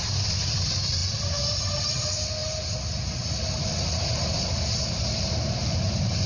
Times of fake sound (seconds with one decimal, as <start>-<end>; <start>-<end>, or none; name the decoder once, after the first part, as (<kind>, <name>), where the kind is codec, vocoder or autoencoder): none